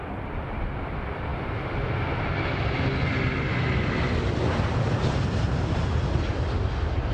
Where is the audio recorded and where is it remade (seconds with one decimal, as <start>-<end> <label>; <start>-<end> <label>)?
0.0-7.1 recorded